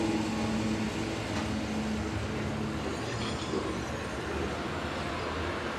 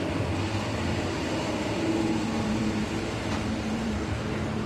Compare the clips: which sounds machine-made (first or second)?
second